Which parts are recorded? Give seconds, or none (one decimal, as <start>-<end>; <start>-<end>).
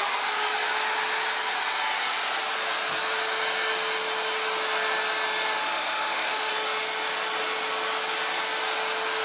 0.0-5.6; 6.5-9.2